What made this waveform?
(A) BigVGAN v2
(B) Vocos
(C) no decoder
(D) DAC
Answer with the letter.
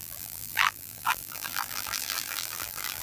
A